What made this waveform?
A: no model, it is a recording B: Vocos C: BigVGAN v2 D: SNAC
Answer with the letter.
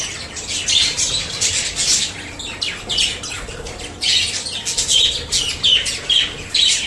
A